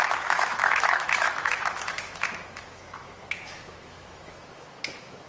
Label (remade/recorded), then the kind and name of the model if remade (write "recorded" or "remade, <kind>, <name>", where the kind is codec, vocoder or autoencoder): remade, autoencoder, DAC-VAE